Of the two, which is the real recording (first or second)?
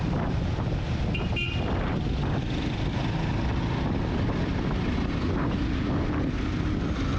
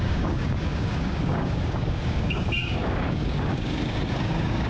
first